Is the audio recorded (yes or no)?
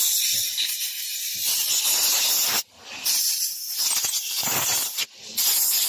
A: yes